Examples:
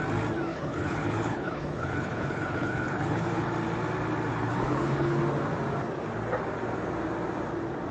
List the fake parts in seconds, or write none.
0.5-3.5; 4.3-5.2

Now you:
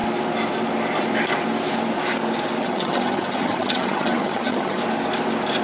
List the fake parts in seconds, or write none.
2.6-4.8